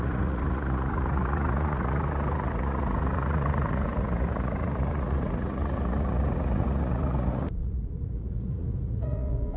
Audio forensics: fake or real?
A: fake